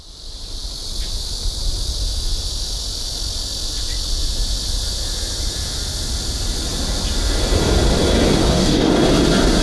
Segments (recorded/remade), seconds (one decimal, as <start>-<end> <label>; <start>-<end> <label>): 0.0-8.4 recorded; 8.4-8.9 remade; 8.9-9.6 recorded